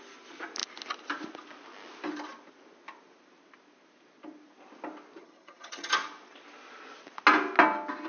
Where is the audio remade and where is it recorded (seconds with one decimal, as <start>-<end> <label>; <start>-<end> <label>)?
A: 0.0-5.2 recorded; 5.2-5.9 remade; 5.9-8.1 recorded